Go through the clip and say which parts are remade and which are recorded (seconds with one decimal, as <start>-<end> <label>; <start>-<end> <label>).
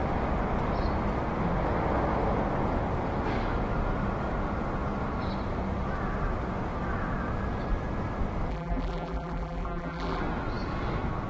0.0-8.5 recorded; 8.5-10.2 remade; 10.2-11.3 recorded